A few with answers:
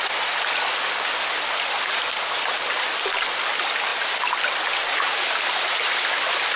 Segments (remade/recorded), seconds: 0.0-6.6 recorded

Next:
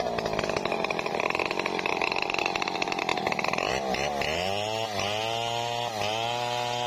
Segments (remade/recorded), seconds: 0.0-6.9 recorded

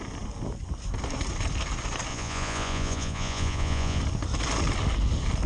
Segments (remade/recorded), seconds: 0.0-2.1 recorded; 2.1-4.0 remade; 4.0-5.5 recorded

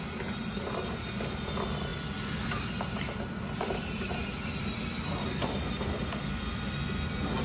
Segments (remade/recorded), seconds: 0.0-7.4 recorded

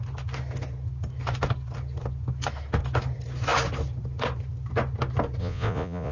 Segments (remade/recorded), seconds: 0.0-5.4 recorded; 5.4-6.1 remade

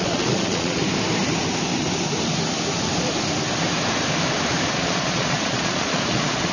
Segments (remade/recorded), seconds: 0.0-0.8 remade; 0.8-4.7 recorded; 4.7-6.5 remade